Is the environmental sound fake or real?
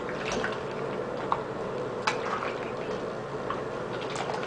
real